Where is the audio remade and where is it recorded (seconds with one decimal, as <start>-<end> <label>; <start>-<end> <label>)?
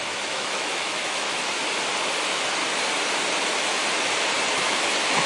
0.0-1.6 remade; 1.6-2.2 recorded; 2.2-2.6 remade; 2.6-3.4 recorded; 3.4-3.8 remade; 3.8-4.5 recorded; 4.5-5.3 remade